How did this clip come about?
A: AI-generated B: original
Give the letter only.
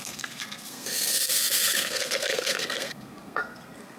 A